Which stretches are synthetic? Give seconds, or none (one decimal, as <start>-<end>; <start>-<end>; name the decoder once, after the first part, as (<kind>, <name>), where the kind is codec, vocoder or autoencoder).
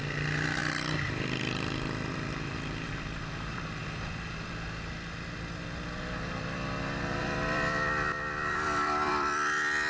0.0-9.9 (vocoder, BigVGAN v2)